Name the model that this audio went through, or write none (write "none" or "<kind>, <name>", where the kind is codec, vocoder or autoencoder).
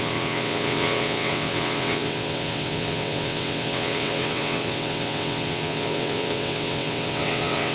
vocoder, WaveNeXt